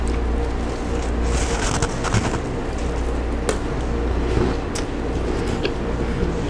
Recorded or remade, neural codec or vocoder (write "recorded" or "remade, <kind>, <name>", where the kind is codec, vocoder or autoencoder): recorded